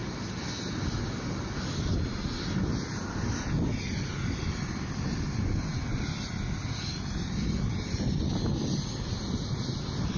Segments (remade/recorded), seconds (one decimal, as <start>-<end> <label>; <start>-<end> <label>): 0.0-10.2 recorded